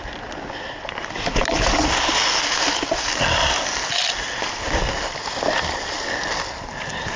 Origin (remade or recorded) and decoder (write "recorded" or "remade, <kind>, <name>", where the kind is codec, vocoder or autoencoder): recorded